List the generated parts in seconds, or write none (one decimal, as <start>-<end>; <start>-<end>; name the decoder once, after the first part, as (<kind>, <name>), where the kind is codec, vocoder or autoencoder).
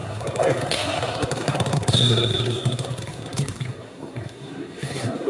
0.0-5.3 (codec, SNAC)